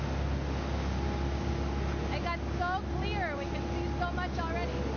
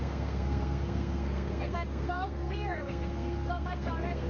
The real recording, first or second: first